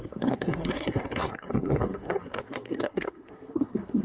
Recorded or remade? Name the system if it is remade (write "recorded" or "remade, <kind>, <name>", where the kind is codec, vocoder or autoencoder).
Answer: remade, codec, SNAC